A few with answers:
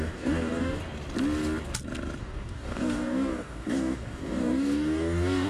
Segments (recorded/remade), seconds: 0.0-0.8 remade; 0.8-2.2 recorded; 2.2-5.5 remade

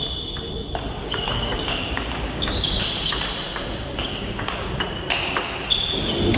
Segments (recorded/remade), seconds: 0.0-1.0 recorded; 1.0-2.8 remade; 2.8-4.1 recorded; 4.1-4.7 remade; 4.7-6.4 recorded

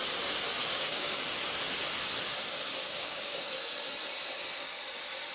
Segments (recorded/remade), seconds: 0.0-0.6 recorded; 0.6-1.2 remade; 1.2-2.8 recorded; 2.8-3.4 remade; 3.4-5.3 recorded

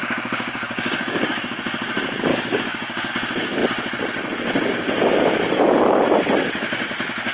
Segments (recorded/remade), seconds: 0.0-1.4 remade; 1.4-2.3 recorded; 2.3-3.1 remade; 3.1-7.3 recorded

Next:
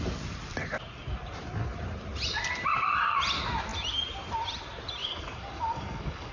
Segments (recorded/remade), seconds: 0.0-5.0 recorded; 5.0-6.3 remade

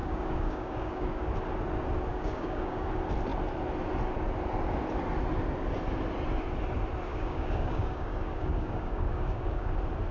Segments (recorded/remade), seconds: 0.0-1.3 remade; 1.3-2.1 recorded; 2.1-2.9 remade; 2.9-7.1 recorded; 7.1-9.7 remade; 9.7-10.1 recorded

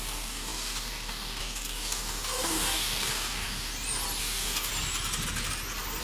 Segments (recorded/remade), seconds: 0.0-3.7 remade; 3.7-4.2 recorded; 4.2-4.7 remade; 4.7-6.0 recorded

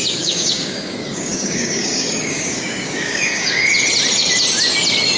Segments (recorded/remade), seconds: 0.0-3.6 remade; 3.6-5.2 recorded